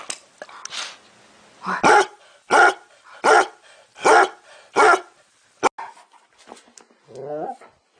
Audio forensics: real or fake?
real